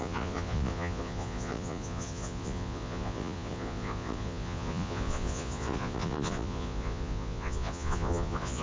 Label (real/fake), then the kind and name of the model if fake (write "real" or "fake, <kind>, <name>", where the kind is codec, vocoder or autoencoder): fake, vocoder, Vocos